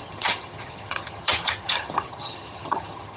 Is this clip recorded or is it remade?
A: remade